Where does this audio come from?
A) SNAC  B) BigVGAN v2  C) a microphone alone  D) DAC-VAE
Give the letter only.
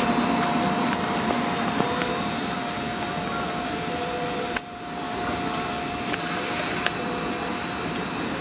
B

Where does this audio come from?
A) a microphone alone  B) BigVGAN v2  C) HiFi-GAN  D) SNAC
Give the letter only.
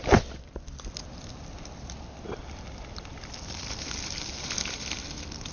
B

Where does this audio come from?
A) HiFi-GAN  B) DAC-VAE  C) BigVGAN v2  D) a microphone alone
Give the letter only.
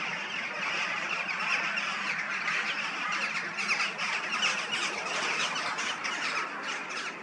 D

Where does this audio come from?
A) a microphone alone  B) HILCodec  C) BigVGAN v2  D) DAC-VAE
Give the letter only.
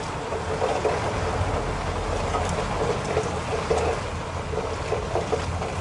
A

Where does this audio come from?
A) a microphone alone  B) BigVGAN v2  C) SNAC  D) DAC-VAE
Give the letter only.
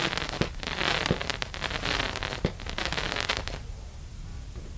A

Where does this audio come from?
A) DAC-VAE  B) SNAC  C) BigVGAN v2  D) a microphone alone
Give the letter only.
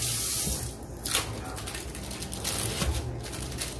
D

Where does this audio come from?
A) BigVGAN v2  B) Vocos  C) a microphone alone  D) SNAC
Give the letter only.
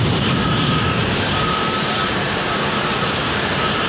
A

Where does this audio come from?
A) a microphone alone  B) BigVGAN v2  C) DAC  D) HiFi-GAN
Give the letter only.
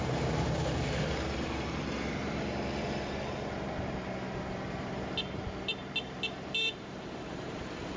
B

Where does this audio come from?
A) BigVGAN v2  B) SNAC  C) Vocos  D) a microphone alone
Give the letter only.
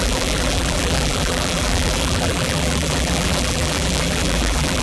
A